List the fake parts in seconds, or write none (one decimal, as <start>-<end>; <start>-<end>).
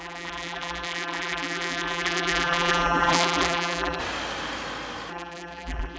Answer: 0.0-4.0; 5.1-6.0